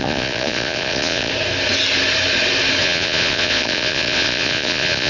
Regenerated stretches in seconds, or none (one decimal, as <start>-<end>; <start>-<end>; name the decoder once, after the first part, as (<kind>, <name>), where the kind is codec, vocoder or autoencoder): 0.0-1.3 (vocoder, Vocos); 2.8-5.1